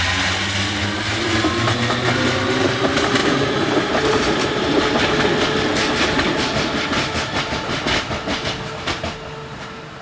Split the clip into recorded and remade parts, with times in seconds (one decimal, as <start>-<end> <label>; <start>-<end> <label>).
0.0-3.2 recorded; 3.2-5.0 remade; 5.0-10.0 recorded